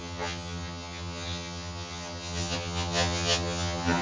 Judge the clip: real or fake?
fake